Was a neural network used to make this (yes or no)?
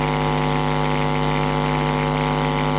no